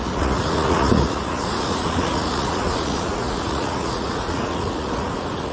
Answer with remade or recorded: remade